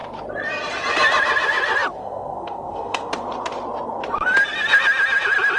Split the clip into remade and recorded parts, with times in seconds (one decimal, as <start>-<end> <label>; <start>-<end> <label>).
0.0-2.0 recorded; 2.0-3.1 remade; 3.1-5.6 recorded